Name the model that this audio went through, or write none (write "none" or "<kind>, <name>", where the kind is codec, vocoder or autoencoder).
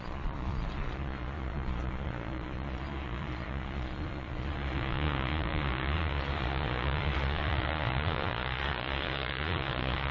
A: vocoder, Vocos